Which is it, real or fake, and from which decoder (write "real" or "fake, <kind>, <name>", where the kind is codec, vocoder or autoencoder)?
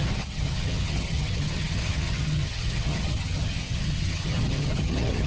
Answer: fake, vocoder, HiFi-GAN